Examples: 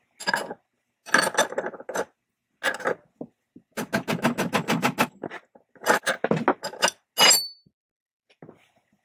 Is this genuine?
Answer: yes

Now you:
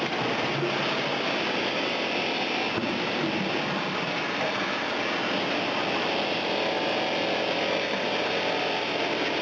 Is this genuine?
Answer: yes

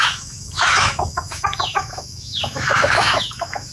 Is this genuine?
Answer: no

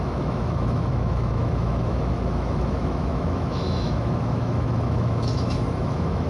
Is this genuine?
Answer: no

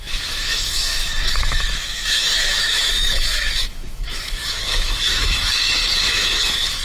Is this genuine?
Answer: no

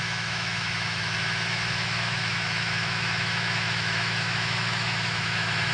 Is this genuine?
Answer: no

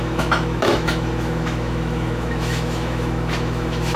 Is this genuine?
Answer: no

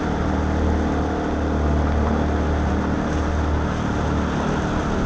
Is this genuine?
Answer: yes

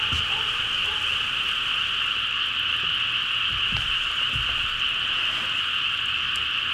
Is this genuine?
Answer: yes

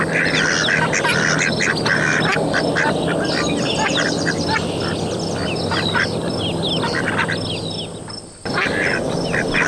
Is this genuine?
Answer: yes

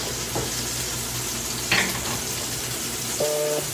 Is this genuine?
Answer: yes